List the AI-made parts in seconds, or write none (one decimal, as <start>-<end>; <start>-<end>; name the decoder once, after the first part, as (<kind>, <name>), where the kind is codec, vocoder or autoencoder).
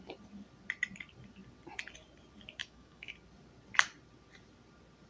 2.6-3.1 (autoencoder, DAC-VAE)